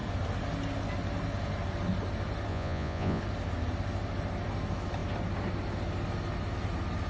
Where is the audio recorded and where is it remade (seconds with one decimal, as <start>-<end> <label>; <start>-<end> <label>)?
0.0-2.5 recorded; 2.5-3.2 remade; 3.2-7.1 recorded